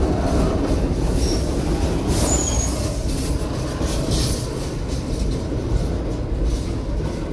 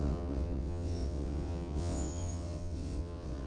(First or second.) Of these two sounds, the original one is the first